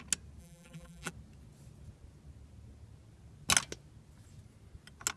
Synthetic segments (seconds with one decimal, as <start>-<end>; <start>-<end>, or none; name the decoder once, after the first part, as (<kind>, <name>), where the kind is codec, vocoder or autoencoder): 0.4-1.1 (vocoder, BigVGAN v2)

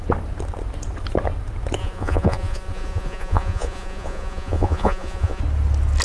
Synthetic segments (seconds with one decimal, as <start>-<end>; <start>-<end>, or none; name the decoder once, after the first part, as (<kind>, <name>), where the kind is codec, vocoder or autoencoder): 1.8-5.4 (vocoder, Vocos)

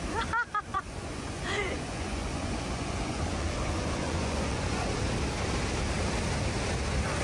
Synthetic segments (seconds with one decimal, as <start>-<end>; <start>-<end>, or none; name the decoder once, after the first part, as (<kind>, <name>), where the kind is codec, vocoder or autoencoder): 0.7-5.0 (vocoder, Vocos)